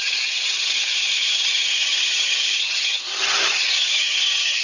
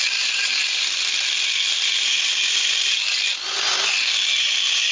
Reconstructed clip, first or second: first